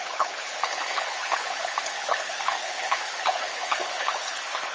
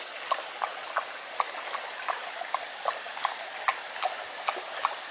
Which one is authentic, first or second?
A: second